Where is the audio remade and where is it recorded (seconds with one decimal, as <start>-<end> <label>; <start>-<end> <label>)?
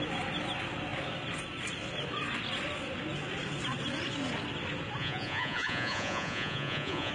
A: 0.0-5.0 recorded; 5.0-7.1 remade